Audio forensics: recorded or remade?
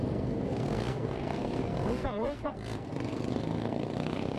remade